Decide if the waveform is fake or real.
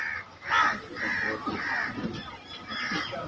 real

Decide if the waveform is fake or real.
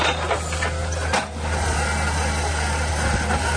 real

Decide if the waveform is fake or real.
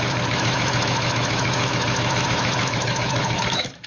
fake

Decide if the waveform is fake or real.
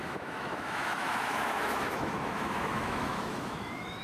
fake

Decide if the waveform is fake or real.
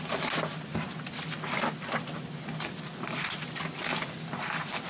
real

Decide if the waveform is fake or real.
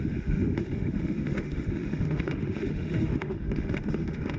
fake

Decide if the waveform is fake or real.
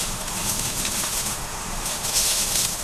fake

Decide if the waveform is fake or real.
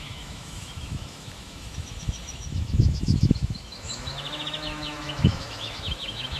fake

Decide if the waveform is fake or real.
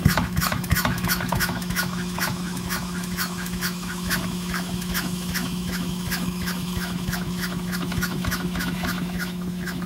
fake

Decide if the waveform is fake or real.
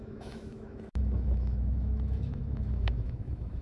fake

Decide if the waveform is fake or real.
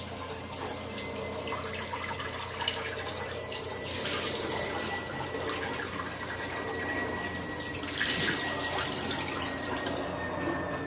real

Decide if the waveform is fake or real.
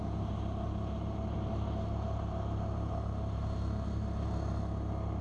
real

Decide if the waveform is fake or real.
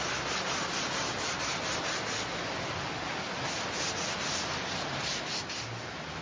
real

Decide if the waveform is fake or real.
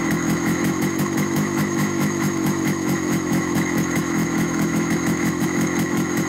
fake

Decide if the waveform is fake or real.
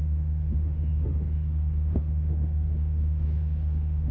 fake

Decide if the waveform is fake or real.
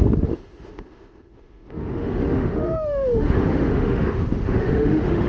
fake